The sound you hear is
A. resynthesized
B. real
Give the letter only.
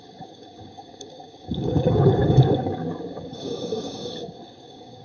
A